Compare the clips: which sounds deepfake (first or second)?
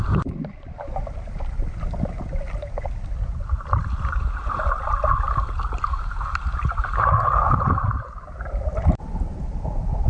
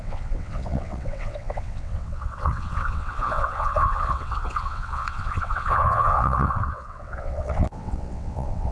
second